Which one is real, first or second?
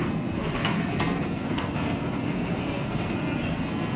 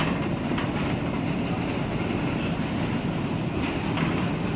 second